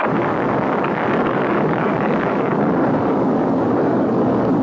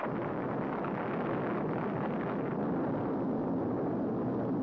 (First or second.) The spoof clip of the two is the first